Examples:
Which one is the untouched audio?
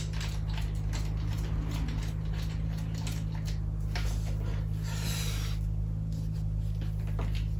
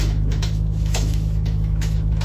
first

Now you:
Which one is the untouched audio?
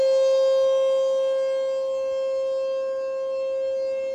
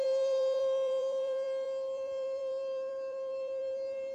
first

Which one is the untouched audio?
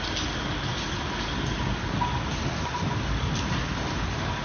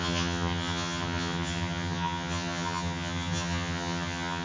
first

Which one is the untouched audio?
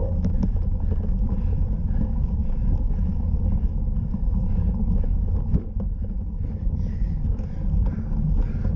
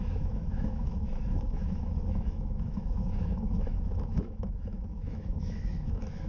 first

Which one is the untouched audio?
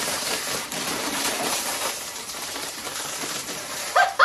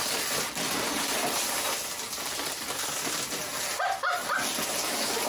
second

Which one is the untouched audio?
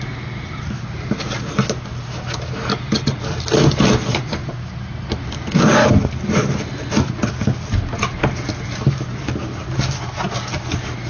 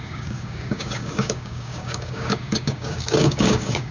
first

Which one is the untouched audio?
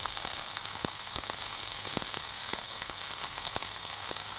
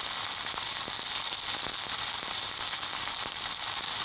second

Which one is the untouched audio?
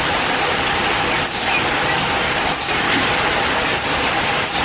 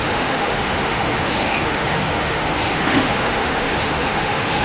first